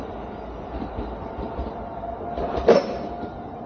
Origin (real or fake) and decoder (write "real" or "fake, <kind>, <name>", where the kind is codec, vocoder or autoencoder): real